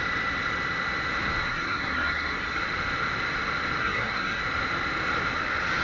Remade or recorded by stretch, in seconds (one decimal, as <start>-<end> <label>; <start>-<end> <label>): 0.0-1.4 recorded; 1.4-2.6 remade; 2.6-3.8 recorded; 3.8-4.4 remade; 4.4-5.8 recorded